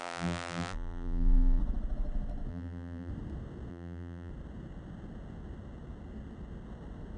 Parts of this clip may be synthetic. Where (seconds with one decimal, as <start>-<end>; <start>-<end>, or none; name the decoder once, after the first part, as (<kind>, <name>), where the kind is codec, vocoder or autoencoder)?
0.0-1.6 (vocoder, BigVGAN v2); 2.5-3.1; 3.7-4.3